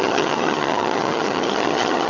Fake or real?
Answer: fake